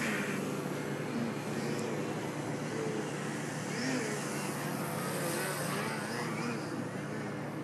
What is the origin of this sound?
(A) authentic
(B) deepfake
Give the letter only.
A